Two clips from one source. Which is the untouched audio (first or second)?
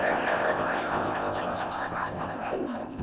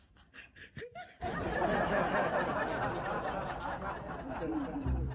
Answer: second